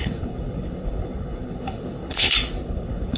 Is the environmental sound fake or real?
fake